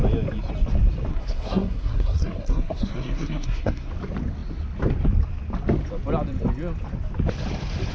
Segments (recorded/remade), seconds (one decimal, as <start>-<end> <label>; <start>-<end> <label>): 0.0-1.1 recorded; 1.1-3.9 remade; 3.9-7.9 recorded